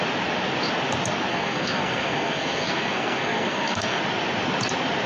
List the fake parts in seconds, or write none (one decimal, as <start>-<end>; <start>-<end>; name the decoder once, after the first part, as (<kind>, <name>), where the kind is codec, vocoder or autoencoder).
1.3-4.0 (codec, SNAC)